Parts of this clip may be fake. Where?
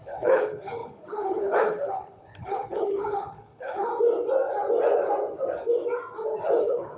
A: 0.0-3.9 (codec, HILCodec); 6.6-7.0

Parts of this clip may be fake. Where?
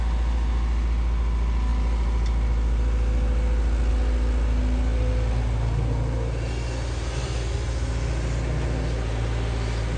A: none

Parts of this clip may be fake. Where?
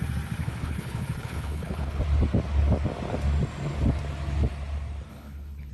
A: 0.4-2.0 (codec, HILCodec); 5.1-5.7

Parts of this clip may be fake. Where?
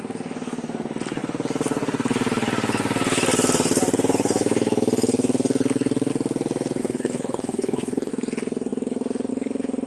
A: 6.8-8.1 (codec, HILCodec)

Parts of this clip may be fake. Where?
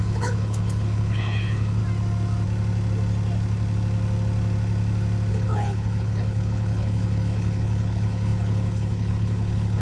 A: 0.0-1.8 (codec, HILCodec); 5.3-9.8